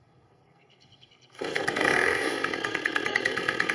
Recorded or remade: remade